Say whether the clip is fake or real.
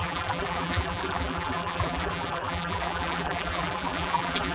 fake